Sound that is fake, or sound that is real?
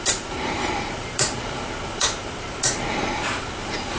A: fake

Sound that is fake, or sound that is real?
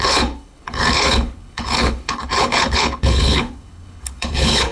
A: fake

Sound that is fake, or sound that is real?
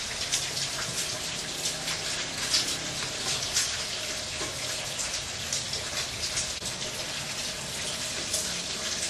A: real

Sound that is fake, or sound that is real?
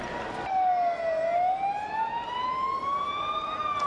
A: real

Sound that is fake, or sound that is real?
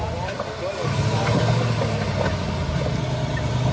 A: real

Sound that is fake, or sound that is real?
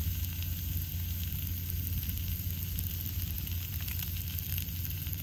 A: real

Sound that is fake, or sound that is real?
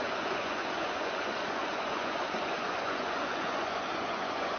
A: fake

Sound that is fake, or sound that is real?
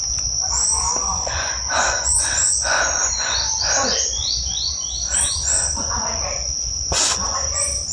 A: fake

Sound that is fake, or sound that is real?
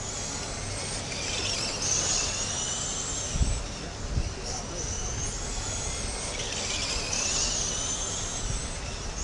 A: real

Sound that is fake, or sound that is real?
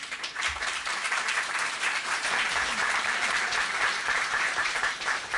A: fake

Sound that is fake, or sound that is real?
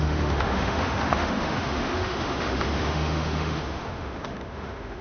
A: fake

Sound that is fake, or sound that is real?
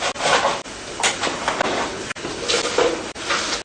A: real